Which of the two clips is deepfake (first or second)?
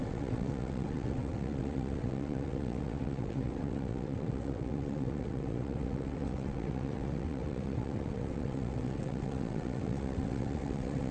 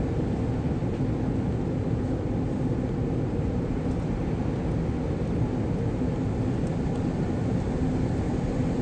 first